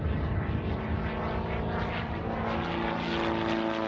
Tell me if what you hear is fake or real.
real